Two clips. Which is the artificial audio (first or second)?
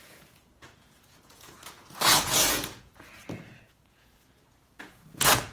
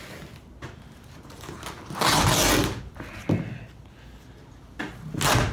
first